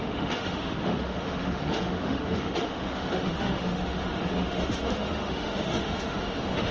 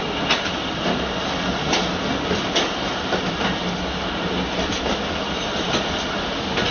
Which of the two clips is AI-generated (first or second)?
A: first